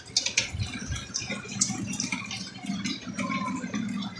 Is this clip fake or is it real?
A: real